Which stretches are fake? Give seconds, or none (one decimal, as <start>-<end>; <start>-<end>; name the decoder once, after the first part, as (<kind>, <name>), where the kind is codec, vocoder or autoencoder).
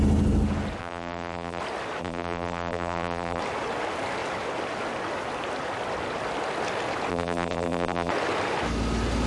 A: 0.8-1.6 (vocoder, BigVGAN v2); 2.0-3.4; 7.1-8.1